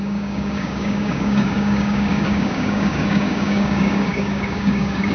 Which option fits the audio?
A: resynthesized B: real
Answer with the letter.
A